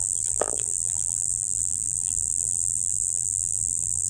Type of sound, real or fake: fake